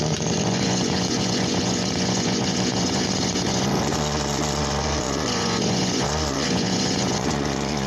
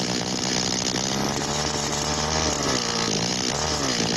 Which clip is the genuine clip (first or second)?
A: second